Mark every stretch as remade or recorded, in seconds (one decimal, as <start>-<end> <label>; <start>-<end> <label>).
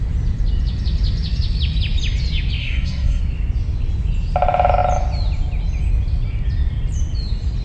0.0-2.6 recorded; 2.6-3.2 remade; 3.2-7.6 recorded